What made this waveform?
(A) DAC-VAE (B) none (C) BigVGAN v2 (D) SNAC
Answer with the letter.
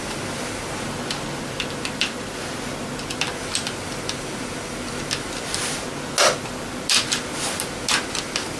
B